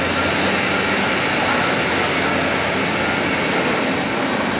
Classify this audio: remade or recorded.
recorded